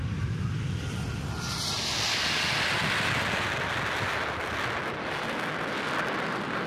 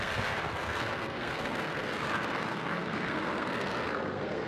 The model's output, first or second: second